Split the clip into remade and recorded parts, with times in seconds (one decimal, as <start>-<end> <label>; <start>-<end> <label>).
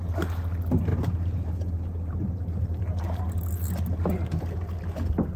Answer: 0.0-0.9 recorded; 0.9-2.8 remade; 2.8-5.4 recorded